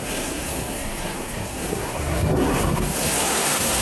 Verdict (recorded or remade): remade